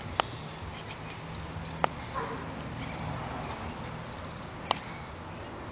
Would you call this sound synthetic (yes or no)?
no